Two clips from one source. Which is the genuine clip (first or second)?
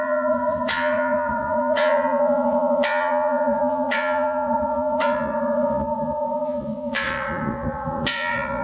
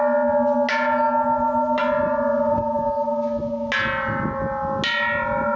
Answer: second